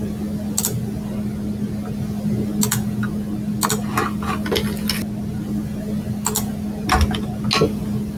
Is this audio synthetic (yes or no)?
no